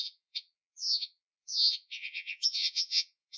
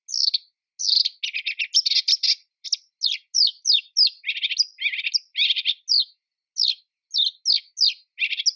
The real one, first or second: second